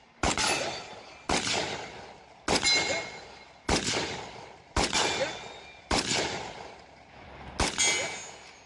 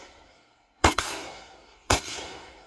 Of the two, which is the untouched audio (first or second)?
first